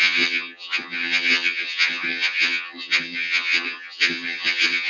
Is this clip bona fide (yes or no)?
no